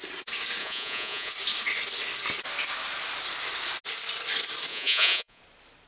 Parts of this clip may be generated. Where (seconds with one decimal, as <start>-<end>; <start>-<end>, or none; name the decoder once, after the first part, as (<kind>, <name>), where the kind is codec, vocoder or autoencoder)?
0.6-1.3 (vocoder, Vocos); 4.7-5.4